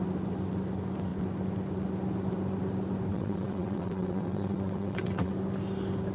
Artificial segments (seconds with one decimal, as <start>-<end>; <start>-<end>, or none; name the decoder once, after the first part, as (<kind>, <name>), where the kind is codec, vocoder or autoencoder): 3.1-5.3 (vocoder, WaveNeXt)